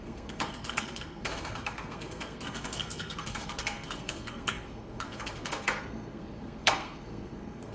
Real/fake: fake